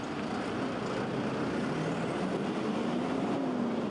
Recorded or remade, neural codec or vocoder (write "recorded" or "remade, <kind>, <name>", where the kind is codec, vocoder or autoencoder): recorded